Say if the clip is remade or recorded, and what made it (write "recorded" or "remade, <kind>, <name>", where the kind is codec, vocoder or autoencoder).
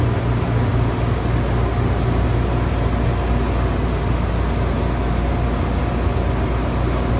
recorded